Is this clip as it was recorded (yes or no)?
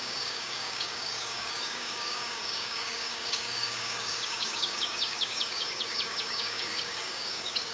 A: no